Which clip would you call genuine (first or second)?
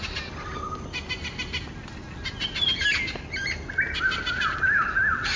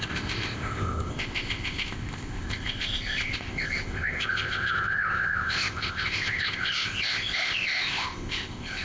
first